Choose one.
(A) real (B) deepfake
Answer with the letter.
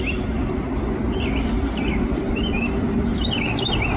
B